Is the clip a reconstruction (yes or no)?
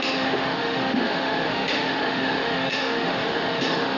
yes